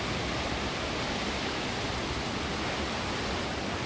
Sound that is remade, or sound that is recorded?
recorded